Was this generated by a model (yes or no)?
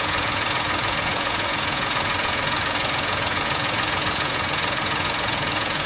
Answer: yes